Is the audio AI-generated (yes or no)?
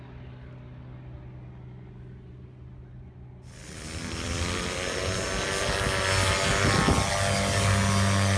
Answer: no